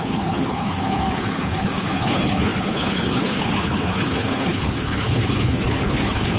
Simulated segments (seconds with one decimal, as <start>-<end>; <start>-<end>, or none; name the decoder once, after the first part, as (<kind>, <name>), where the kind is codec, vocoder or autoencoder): 0.0-6.4 (codec, HILCodec)